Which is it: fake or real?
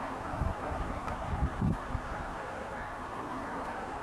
fake